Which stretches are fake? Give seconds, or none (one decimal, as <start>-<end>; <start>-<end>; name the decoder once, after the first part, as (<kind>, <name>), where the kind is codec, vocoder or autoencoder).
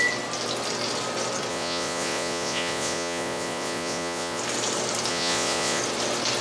1.5-4.4 (vocoder, Vocos); 5.1-5.8